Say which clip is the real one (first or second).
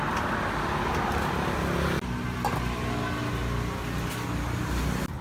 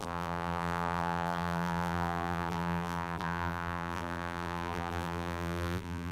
first